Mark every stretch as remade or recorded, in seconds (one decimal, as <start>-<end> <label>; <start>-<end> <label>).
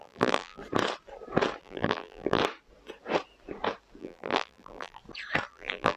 0.0-0.6 remade; 0.6-1.6 recorded; 1.6-2.4 remade; 2.4-4.0 recorded; 4.0-5.0 remade; 5.0-5.5 recorded; 5.5-6.0 remade